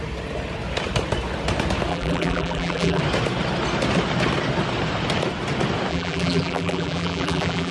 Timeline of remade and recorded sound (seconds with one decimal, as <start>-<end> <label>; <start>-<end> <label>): 0.0-1.9 recorded; 1.9-3.0 remade; 3.0-5.9 recorded; 5.9-7.7 remade